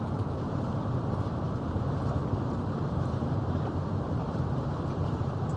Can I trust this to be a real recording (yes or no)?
no